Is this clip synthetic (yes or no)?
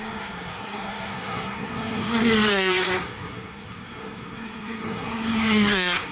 yes